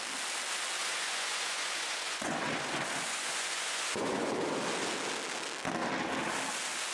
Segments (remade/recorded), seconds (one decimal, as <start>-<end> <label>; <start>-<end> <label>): 0.0-0.8 recorded; 0.8-4.3 remade; 4.3-6.9 recorded